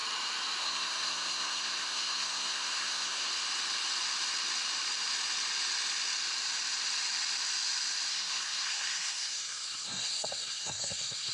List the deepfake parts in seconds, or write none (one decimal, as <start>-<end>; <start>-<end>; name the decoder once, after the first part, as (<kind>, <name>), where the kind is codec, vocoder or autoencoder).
0.6-3.3 (codec, SNAC); 8.1-11.3